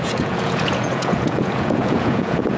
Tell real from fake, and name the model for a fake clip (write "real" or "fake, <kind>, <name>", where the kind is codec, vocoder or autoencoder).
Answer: fake, vocoder, Vocos